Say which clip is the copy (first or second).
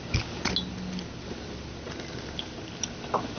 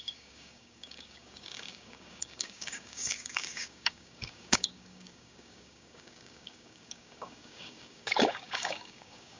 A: second